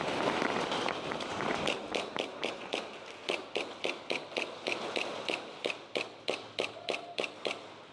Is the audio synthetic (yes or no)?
no